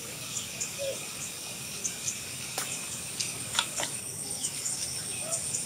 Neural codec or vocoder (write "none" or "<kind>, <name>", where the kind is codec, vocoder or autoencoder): codec, DAC